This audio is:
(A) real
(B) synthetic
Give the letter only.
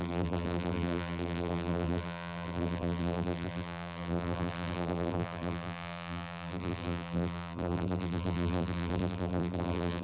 B